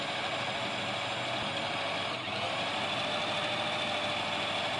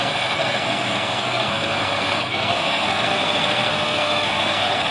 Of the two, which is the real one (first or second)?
first